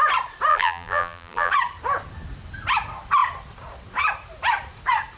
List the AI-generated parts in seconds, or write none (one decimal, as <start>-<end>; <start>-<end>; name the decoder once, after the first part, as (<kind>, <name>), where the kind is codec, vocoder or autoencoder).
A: 0.5-1.5 (vocoder, BigVGAN v2)